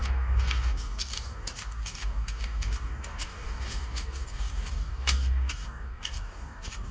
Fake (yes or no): yes